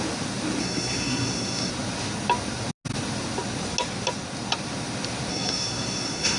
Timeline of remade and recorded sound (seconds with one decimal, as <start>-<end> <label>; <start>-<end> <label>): 0.0-0.6 recorded; 0.6-1.7 remade; 1.7-5.3 recorded; 5.3-6.4 remade